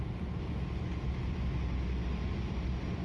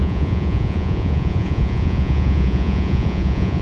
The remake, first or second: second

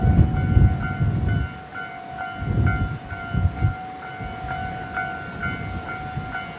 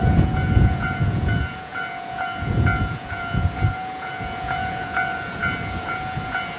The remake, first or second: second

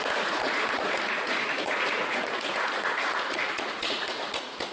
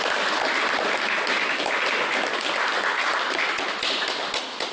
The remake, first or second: first